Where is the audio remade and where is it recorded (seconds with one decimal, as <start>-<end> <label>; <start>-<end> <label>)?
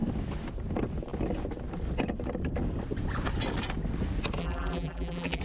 0.0-4.4 recorded; 4.4-5.4 remade